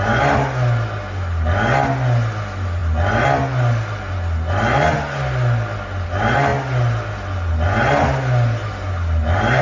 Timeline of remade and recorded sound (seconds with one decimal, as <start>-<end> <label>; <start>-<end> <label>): 0.0-9.6 recorded